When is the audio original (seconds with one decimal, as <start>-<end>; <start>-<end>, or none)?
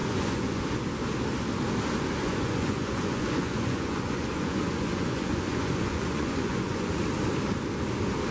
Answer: 0.6-2.2; 6.9-8.3